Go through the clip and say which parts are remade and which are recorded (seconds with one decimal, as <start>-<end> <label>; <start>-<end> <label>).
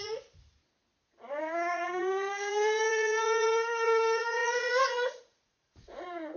0.0-0.6 remade; 0.6-1.4 recorded; 1.4-6.4 remade